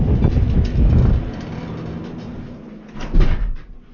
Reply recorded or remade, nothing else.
recorded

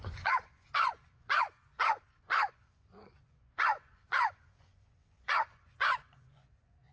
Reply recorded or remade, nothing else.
remade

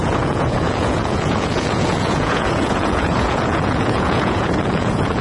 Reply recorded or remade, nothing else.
remade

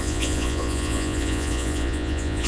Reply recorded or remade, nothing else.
remade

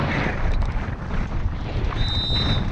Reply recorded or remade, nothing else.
recorded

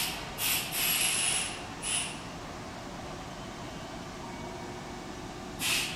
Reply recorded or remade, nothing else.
recorded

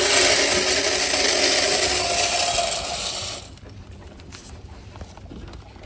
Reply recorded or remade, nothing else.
recorded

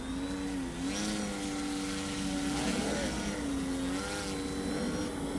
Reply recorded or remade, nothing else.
recorded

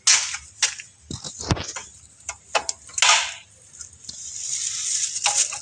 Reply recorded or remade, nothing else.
recorded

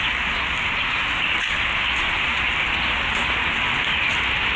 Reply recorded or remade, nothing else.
recorded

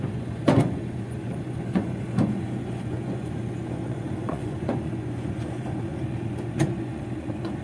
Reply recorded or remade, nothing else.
remade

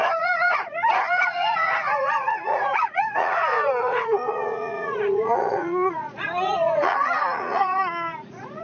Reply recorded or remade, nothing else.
remade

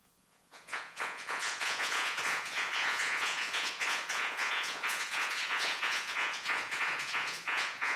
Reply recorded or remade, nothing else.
remade